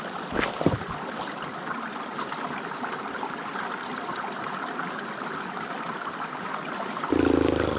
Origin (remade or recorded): recorded